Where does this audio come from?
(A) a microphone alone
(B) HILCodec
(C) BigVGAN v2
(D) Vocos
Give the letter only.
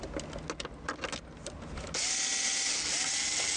A